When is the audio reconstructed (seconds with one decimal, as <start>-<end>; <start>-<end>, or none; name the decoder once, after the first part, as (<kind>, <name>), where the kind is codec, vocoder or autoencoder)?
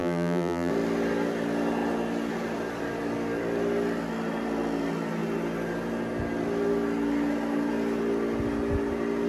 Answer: 0.0-0.7 (vocoder, BigVGAN v2)